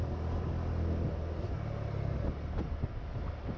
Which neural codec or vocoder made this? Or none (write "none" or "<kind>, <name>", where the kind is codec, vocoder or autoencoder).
none